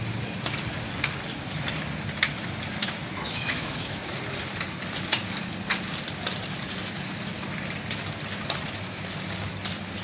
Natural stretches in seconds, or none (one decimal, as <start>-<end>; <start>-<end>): 0.0-2.8; 4.1-10.0